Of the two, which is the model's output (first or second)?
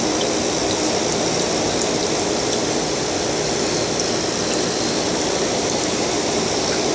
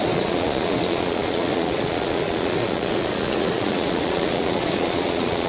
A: second